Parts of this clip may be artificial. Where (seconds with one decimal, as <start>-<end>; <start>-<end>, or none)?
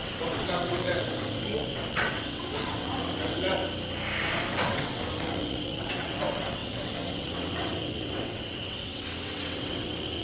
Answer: 0.0-3.6; 4.7-10.2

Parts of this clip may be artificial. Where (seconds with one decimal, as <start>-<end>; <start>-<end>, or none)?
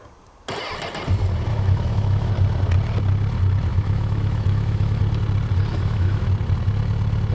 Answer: 1.5-2.3; 3.7-5.0; 5.7-6.2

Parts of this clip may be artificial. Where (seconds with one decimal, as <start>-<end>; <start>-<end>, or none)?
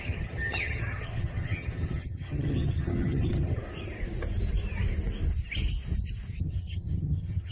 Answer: 0.0-3.6; 6.4-7.5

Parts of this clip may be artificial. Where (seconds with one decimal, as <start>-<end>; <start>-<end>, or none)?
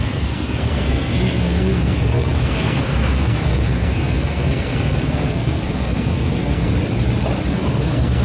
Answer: 0.0-6.7; 7.5-8.2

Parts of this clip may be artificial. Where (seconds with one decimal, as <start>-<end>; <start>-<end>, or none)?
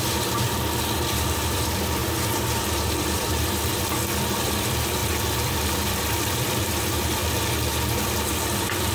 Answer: 0.0-7.2; 8.0-8.9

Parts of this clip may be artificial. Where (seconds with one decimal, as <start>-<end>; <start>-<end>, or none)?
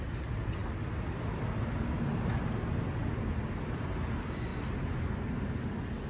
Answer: none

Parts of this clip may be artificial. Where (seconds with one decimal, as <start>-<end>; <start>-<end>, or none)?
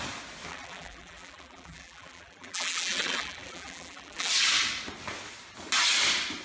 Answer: 0.5-4.3